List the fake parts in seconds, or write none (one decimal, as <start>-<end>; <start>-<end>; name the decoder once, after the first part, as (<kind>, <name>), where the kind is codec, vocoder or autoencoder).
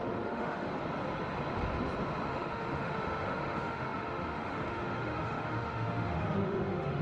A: 0.0-0.7 (autoencoder, DAC-VAE); 2.3-7.0